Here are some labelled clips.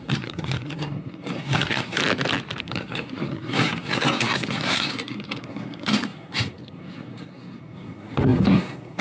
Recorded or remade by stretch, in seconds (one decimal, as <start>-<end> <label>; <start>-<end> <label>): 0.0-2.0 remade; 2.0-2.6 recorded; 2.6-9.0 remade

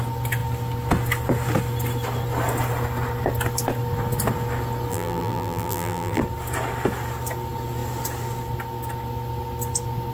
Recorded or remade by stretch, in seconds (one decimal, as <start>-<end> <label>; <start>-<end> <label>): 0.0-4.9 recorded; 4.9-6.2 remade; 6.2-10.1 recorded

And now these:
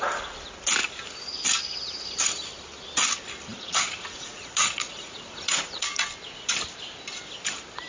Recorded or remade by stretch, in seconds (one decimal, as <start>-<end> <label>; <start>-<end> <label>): 0.0-3.5 recorded; 3.5-6.0 remade; 6.0-7.9 recorded

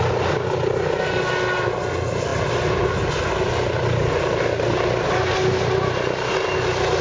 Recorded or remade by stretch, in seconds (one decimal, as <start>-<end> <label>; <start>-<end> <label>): 0.0-7.0 recorded